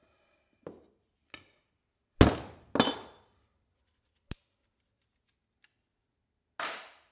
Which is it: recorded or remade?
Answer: recorded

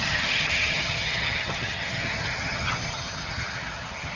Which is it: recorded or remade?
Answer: remade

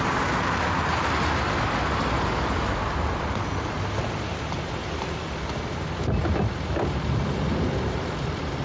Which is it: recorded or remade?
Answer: recorded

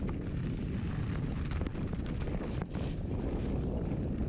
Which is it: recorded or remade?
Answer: recorded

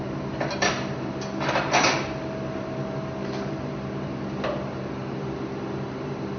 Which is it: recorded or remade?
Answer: recorded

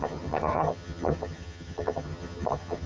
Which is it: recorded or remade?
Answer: remade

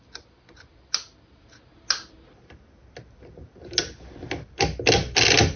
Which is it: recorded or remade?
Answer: recorded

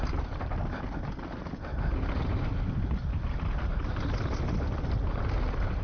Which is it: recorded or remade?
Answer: recorded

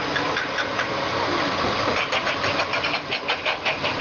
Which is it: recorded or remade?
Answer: recorded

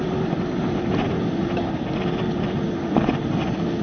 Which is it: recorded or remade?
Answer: recorded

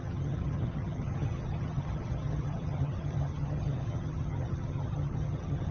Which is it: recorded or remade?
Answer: remade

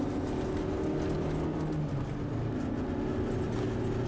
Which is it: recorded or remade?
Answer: recorded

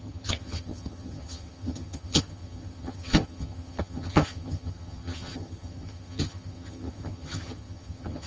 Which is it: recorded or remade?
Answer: remade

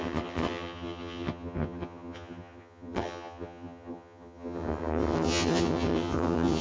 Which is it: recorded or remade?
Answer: remade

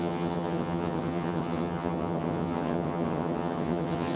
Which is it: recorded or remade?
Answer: remade